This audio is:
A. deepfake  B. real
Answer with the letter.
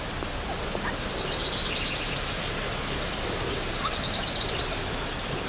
B